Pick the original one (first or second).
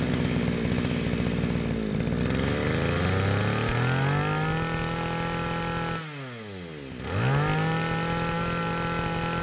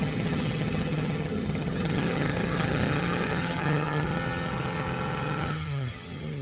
first